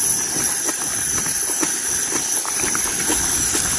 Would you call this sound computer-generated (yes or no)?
no